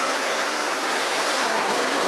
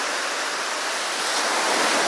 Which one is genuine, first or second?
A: second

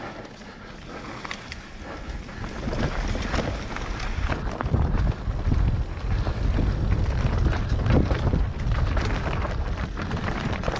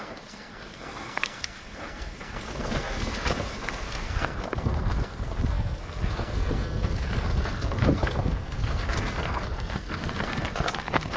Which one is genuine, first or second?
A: first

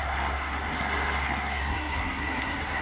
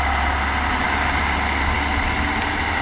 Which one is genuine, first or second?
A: second